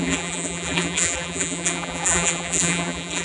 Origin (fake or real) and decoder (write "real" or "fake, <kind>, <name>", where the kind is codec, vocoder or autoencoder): fake, vocoder, BigVGAN v2